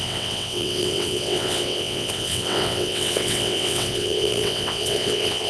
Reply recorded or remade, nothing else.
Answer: remade